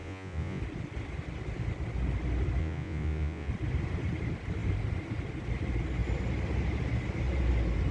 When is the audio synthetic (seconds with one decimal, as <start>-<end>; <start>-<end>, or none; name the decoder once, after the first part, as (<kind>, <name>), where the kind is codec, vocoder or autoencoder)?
0.0-0.6 (vocoder, Vocos); 2.6-3.5